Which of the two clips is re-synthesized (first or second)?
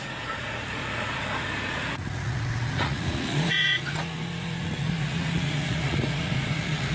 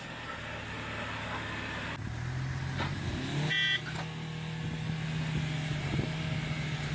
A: first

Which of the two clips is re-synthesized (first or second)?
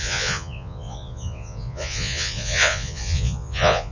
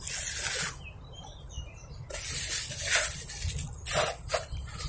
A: first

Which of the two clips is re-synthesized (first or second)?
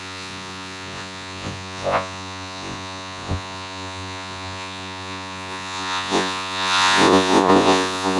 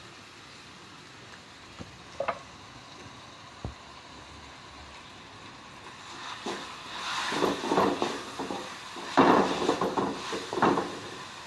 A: first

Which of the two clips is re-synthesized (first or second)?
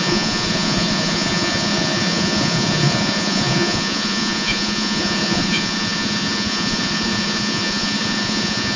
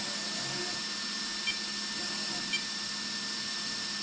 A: first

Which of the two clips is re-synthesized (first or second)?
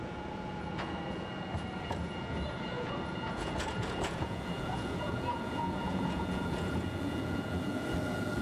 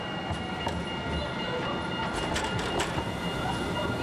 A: first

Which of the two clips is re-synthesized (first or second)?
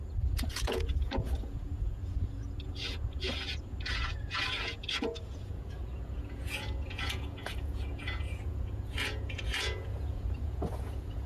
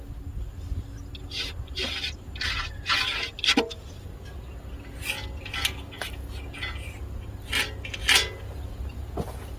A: first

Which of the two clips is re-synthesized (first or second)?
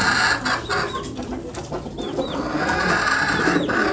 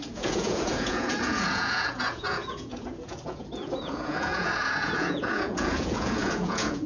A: second